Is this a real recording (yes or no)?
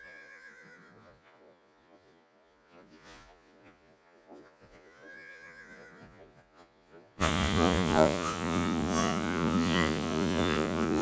no